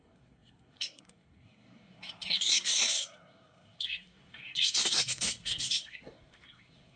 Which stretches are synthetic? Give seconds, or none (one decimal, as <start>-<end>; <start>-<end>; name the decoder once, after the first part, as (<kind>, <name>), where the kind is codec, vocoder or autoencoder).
0.0-7.0 (codec, SNAC)